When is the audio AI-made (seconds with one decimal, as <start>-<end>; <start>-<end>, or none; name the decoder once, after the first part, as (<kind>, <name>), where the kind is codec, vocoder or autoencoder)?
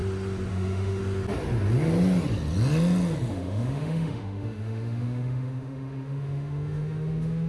0.5-1.0 (autoencoder, DAC-VAE); 3.3-7.5